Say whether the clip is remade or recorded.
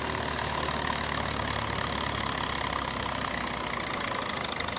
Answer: recorded